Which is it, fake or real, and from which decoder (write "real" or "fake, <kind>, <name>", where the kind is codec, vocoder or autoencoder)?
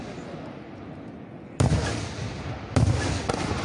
real